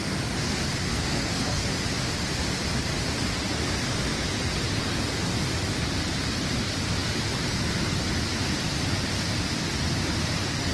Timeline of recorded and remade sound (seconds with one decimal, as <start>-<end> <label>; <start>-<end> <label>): 0.0-0.9 recorded; 0.9-1.7 remade; 1.7-10.7 recorded